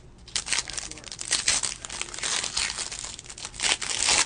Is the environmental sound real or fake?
real